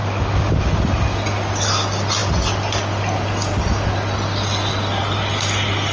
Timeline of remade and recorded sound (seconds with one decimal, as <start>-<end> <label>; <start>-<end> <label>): 0.0-5.9 recorded